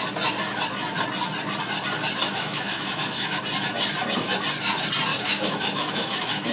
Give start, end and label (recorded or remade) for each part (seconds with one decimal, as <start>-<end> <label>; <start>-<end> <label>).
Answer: 0.0-2.2 recorded; 2.2-3.4 remade; 3.4-5.1 recorded; 5.1-6.5 remade

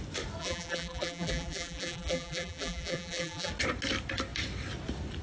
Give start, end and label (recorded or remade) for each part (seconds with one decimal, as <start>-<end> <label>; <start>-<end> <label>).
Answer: 0.0-0.4 recorded; 0.4-3.5 remade; 3.5-5.2 recorded